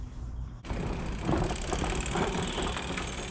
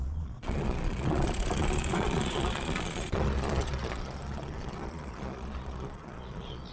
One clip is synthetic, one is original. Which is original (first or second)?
first